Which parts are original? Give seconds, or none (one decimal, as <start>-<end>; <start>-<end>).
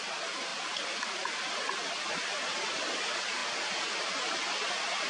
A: 0.0-5.1